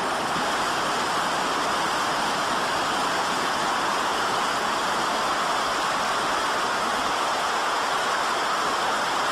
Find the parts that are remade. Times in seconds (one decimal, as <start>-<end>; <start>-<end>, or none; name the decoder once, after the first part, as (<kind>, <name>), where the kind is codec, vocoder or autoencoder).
3.2-4.7 (vocoder, Vocos); 6.9-8.0